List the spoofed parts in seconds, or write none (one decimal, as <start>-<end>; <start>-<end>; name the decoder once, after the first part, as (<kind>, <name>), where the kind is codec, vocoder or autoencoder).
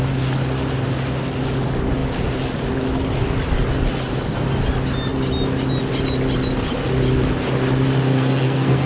8.1-8.9 (codec, SNAC)